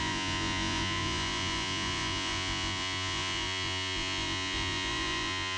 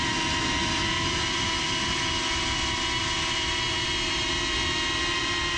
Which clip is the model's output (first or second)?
first